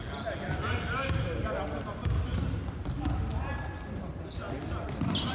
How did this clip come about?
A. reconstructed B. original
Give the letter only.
B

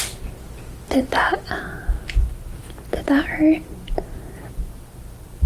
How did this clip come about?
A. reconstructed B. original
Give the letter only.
B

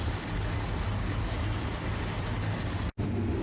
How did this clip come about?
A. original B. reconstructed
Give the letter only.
A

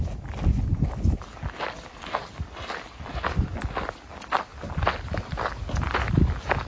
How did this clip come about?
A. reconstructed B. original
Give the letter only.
B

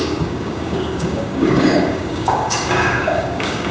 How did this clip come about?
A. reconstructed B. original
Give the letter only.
A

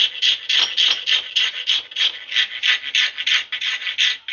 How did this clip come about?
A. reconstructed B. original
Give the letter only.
B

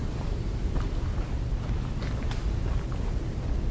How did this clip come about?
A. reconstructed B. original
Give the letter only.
B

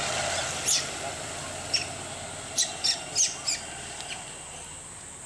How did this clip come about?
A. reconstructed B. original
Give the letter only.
B